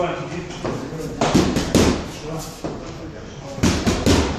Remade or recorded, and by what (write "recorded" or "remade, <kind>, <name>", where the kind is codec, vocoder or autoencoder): recorded